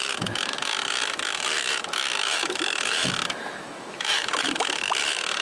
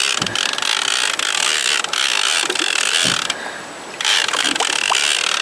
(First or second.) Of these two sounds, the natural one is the second